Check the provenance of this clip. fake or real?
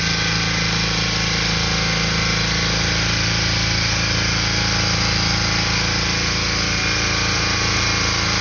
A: real